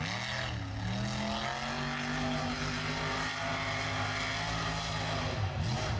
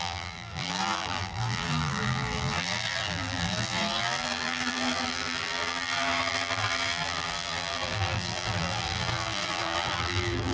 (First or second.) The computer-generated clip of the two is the second